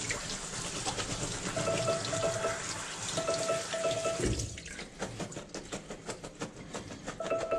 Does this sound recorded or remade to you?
recorded